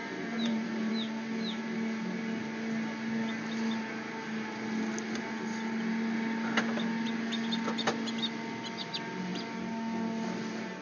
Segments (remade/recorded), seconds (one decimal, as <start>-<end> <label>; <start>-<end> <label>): 0.0-0.9 remade; 0.9-10.8 recorded